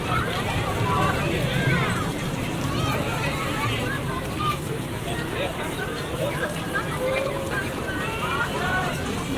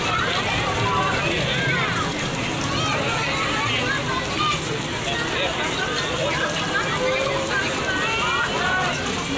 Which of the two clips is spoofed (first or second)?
first